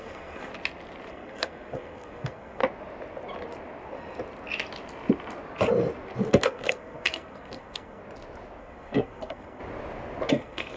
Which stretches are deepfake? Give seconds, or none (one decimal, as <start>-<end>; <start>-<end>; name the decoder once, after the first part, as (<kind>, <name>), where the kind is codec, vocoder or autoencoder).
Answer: 0.0-0.5 (codec, SNAC); 1.1-2.6; 6.3-8.0; 8.6-9.6; 10.3-10.8